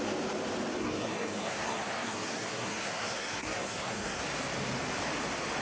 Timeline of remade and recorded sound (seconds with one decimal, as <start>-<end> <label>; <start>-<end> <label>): 0.0-0.8 recorded; 0.8-4.2 remade; 4.2-5.6 recorded

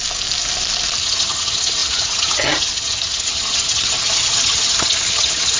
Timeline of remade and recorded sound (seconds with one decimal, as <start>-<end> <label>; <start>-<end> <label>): 0.0-1.0 recorded; 1.0-5.6 remade

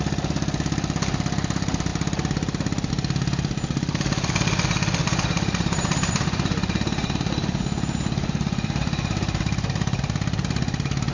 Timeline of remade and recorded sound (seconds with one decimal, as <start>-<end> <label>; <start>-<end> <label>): 0.0-5.0 recorded; 5.0-10.0 remade; 10.0-11.1 recorded

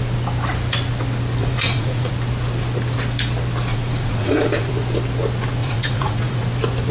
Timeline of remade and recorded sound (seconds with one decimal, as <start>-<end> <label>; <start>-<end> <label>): 0.0-1.4 recorded; 1.4-2.1 remade; 2.1-3.7 recorded; 3.7-4.7 remade; 4.7-5.6 recorded; 5.6-6.4 remade; 6.4-6.9 recorded

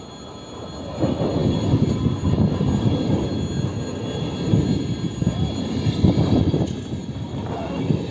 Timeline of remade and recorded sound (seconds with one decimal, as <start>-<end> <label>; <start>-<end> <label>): 0.0-6.4 recorded; 6.4-7.3 remade; 7.3-8.1 recorded

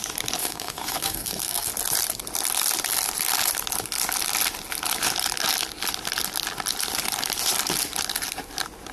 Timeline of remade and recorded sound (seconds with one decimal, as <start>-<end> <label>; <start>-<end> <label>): 0.0-0.4 recorded; 0.4-1.7 remade; 1.7-8.9 recorded

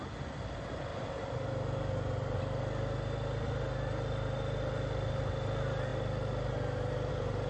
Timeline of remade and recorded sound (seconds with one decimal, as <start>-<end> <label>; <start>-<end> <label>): 0.0-7.5 recorded

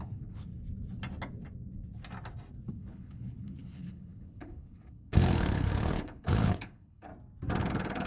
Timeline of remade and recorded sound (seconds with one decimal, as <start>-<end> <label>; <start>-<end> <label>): 0.0-0.5 remade; 0.5-2.7 recorded; 2.7-7.1 remade; 7.1-7.6 recorded; 7.6-8.1 remade